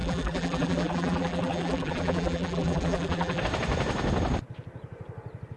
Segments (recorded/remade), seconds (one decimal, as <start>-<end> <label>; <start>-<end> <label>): 0.0-3.4 remade; 3.4-5.6 recorded